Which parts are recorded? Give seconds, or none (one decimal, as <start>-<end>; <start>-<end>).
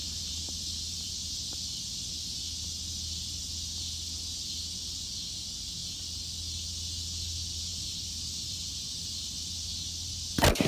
1.1-7.7; 9.5-10.7